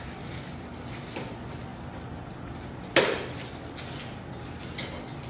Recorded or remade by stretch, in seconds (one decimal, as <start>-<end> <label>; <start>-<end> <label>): 0.0-5.3 recorded

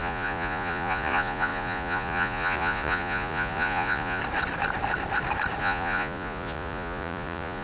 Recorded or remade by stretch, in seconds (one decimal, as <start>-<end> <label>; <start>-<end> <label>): 0.0-4.2 remade; 4.2-5.6 recorded; 5.6-7.6 remade

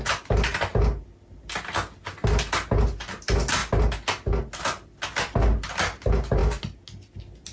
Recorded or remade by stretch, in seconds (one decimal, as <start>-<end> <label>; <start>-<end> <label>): 0.0-7.5 recorded

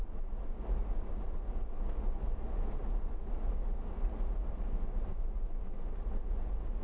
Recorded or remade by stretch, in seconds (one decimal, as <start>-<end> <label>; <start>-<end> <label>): 0.0-5.1 recorded; 5.1-5.6 remade; 5.6-6.8 recorded

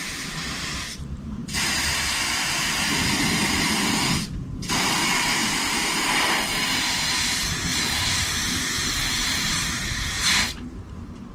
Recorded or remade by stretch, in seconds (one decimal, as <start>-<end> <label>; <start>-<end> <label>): 0.0-1.4 remade; 1.4-5.4 recorded; 5.4-8.3 remade; 8.3-9.1 recorded; 9.1-11.3 remade

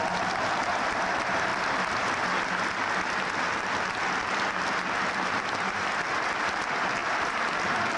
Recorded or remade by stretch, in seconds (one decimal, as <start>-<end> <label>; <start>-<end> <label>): 0.0-8.0 recorded

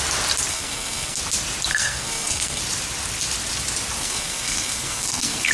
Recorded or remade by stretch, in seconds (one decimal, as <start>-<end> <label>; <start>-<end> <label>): 0.0-0.5 recorded; 0.5-1.2 remade; 1.2-1.7 recorded; 1.7-2.6 remade; 2.6-4.0 recorded; 4.0-5.5 remade